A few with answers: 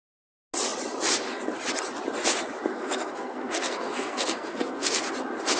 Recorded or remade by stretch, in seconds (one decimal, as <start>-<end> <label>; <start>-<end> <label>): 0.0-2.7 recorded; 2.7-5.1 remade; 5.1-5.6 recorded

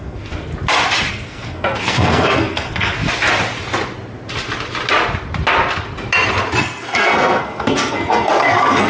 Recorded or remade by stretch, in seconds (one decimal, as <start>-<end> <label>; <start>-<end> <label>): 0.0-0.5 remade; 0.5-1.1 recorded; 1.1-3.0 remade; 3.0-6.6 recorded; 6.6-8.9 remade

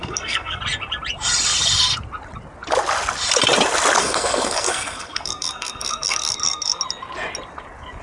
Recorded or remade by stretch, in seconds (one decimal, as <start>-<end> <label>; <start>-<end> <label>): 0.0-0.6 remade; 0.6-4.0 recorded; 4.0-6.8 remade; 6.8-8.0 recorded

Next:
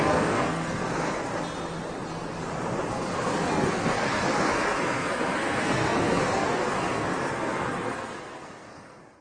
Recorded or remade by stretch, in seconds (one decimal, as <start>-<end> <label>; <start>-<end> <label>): 0.0-1.3 remade; 1.3-2.9 recorded; 2.9-9.2 remade